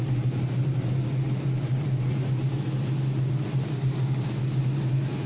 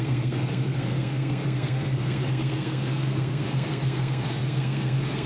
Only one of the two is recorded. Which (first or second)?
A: first